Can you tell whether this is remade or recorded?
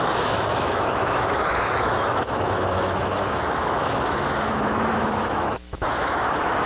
remade